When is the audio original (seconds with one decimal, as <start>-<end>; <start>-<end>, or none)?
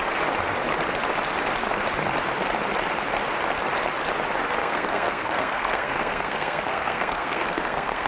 0.0-4.6